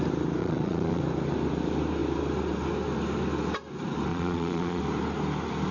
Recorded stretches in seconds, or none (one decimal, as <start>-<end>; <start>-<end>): 0.0-0.4; 1.0-4.1; 4.8-5.7